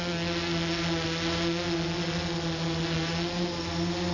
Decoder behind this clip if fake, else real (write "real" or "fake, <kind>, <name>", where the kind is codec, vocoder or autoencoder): real